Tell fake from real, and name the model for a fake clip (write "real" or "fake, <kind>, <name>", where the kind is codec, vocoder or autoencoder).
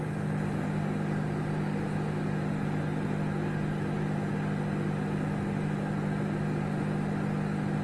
real